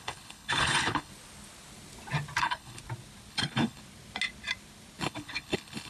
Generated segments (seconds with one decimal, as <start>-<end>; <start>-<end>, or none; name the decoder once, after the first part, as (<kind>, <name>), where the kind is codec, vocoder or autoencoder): 0.0-1.1 (codec, HILCodec); 2.4-2.8; 3.3-3.8; 5.0-5.9